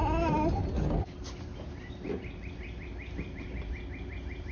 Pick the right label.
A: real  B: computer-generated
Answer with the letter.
A